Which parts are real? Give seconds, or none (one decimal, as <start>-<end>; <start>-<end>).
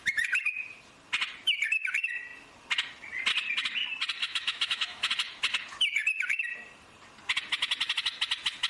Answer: 0.0-4.2; 5.1-8.7